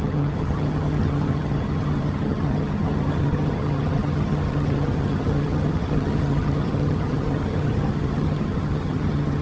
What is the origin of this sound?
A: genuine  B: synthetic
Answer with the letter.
B